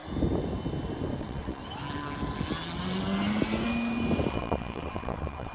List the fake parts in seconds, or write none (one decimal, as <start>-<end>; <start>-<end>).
1.2-1.6; 4.3-5.5